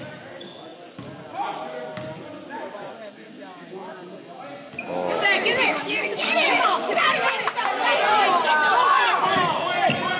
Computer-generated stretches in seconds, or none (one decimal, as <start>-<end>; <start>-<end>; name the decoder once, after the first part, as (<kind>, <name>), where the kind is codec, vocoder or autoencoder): 5.5-6.9 (autoencoder, DAC-VAE)